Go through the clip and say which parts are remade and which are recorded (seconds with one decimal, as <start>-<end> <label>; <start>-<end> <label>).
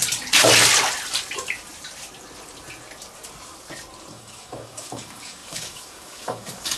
0.0-4.1 recorded; 4.1-6.8 remade